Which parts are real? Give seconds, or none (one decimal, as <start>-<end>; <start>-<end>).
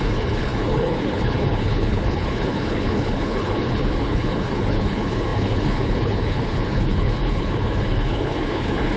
none